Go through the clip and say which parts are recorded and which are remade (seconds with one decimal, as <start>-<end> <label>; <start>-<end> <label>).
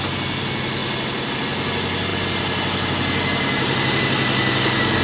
0.0-5.0 recorded